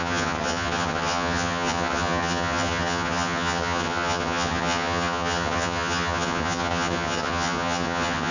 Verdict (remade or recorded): remade